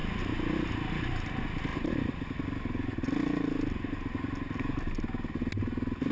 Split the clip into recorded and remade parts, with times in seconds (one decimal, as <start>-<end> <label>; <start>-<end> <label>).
0.0-6.1 recorded